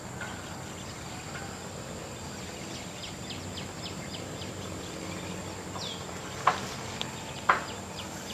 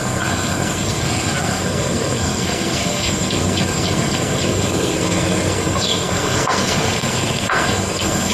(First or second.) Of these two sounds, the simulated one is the second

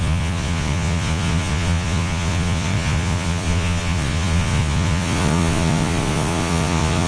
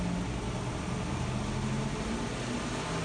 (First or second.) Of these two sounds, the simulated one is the first